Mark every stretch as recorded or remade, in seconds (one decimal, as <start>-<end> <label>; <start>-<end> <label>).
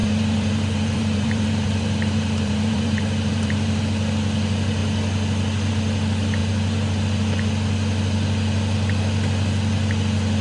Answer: 0.0-3.8 remade; 3.8-6.4 recorded; 6.4-7.0 remade; 7.0-10.4 recorded